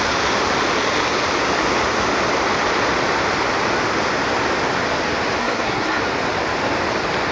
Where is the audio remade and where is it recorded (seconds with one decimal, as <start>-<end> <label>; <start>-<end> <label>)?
0.0-5.4 recorded; 5.4-6.0 remade; 6.0-7.3 recorded